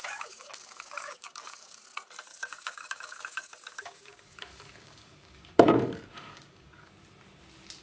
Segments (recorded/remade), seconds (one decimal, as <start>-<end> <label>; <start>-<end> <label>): 0.0-1.8 remade; 1.8-2.3 recorded; 2.3-6.9 remade; 6.9-7.8 recorded